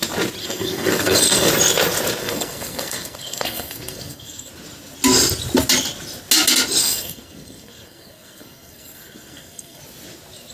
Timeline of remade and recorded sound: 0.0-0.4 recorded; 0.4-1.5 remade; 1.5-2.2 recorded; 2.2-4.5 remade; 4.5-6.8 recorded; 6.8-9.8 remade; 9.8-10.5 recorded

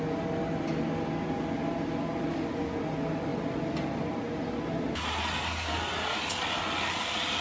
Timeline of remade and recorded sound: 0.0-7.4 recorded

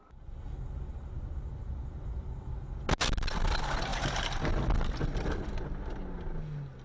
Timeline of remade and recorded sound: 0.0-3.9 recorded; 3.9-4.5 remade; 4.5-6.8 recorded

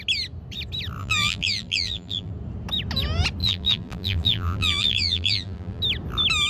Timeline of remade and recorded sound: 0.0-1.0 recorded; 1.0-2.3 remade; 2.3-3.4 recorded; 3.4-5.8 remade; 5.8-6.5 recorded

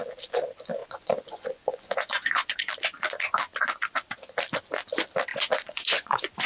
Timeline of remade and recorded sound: 0.0-0.8 recorded; 0.8-2.7 remade; 2.7-5.3 recorded; 5.3-6.5 remade

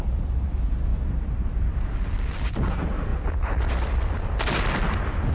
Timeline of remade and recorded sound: 0.0-5.3 recorded

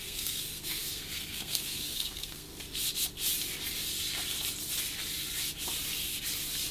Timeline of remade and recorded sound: 0.0-2.5 remade; 2.5-6.7 recorded